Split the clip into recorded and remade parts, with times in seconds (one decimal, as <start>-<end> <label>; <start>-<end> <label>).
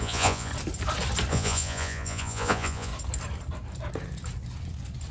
0.0-0.5 remade; 0.5-1.3 recorded; 1.3-2.9 remade; 2.9-5.1 recorded